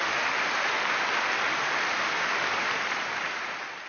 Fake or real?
real